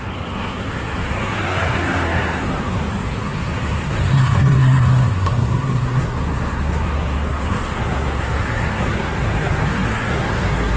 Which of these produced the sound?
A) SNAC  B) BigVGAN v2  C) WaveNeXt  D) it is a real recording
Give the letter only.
A